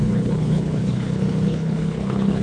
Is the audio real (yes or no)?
no